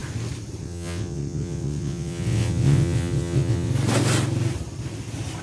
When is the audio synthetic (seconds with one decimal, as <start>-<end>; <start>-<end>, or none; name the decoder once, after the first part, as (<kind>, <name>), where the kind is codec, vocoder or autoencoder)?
0.6-3.7 (vocoder, WaveNeXt)